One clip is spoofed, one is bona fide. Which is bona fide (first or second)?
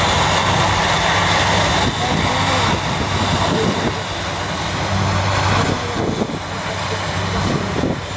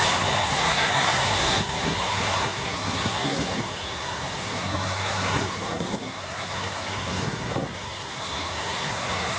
first